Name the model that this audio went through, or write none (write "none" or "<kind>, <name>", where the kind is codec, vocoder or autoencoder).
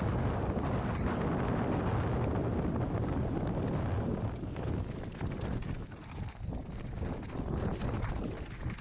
none